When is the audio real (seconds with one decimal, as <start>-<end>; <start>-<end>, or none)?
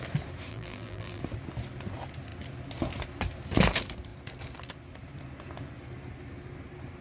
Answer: 0.0-0.5; 1.2-7.0